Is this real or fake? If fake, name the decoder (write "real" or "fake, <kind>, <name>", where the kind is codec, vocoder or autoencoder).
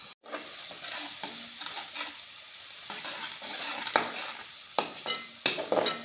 real